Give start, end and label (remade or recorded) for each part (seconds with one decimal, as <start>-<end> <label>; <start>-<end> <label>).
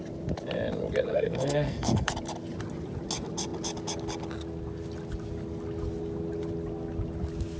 0.0-1.1 recorded; 1.1-2.1 remade; 2.1-7.6 recorded